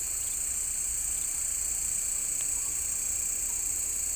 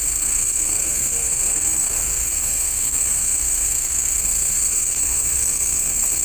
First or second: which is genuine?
first